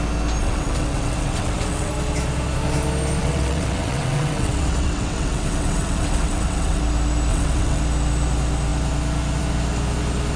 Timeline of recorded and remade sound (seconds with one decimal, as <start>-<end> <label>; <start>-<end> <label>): 0.0-0.4 recorded; 0.4-1.9 remade; 1.9-3.2 recorded; 3.2-6.8 remade; 6.8-7.3 recorded; 7.3-7.8 remade; 7.8-10.4 recorded